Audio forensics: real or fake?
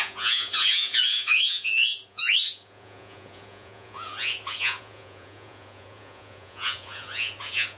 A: fake